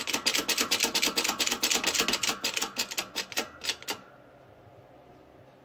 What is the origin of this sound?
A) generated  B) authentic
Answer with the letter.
B